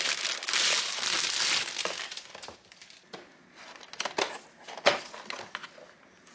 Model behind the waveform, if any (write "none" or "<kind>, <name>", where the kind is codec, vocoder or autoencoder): none